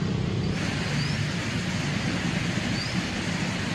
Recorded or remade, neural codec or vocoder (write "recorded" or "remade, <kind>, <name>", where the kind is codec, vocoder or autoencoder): recorded